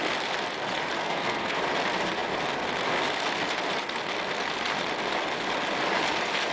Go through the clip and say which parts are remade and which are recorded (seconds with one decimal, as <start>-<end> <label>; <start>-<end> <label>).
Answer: 0.0-1.0 recorded; 1.0-1.6 remade; 1.6-6.5 recorded